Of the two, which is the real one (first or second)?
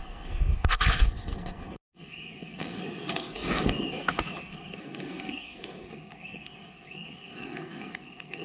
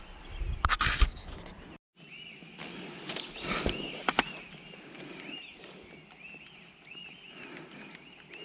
second